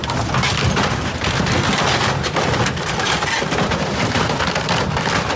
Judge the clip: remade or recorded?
recorded